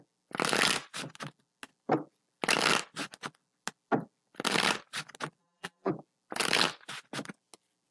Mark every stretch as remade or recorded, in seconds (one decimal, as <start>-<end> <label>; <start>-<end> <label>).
0.0-5.4 recorded; 5.4-5.9 remade; 5.9-7.9 recorded